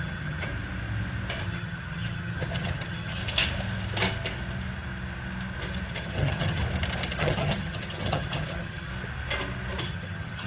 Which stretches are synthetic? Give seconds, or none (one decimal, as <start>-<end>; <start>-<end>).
0.0-0.5; 1.4-3.2; 5.9-6.6; 7.2-8.9; 9.8-10.5